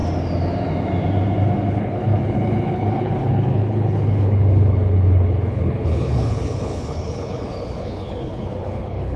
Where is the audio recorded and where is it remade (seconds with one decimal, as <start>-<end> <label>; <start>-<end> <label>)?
0.0-1.7 recorded; 1.7-9.2 remade